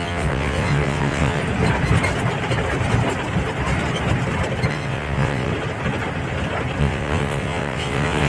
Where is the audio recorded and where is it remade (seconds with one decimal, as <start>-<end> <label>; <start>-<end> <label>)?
0.0-1.4 remade; 1.4-4.7 recorded; 4.7-5.5 remade; 5.5-6.8 recorded; 6.8-8.3 remade